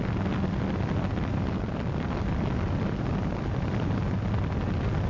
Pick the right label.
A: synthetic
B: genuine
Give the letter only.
B